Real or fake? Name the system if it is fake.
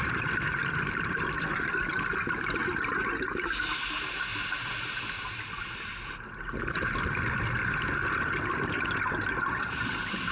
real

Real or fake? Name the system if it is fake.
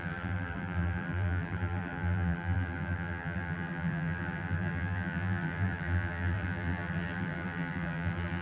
fake, vocoder, BigVGAN v2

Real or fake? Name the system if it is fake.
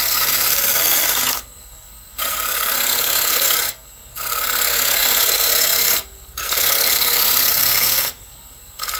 fake, codec, SNAC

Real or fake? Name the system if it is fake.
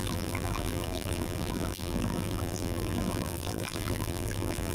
fake, vocoder, BigVGAN v2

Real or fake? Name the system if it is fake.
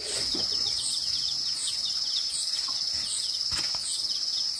fake, vocoder, Vocos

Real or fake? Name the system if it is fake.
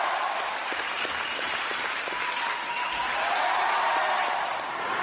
fake, vocoder, BigVGAN v2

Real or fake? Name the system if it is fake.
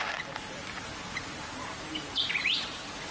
real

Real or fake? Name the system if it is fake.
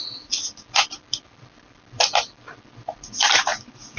real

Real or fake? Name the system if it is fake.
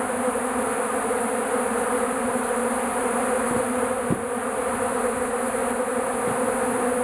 real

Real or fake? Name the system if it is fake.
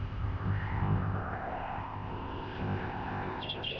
fake, codec, ZipCodec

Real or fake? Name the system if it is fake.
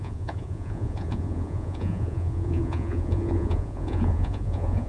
fake, vocoder, Vocos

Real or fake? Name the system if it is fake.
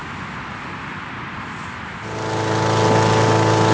real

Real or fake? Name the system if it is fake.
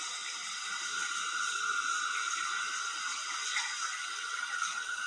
real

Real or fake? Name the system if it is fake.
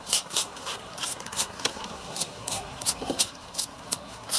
fake, codec, SNAC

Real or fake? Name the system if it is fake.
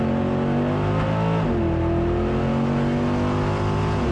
real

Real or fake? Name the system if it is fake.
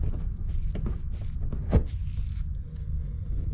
real